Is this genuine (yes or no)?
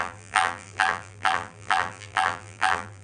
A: no